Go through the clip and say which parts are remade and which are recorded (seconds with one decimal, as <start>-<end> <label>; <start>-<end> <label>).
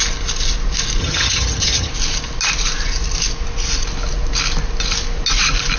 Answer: 0.0-1.0 recorded; 1.0-1.9 remade; 1.9-5.8 recorded